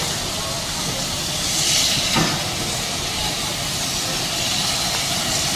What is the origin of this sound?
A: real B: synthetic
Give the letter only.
A